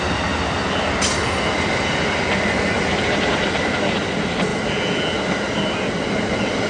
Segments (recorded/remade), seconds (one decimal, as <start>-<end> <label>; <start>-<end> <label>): 0.0-6.7 recorded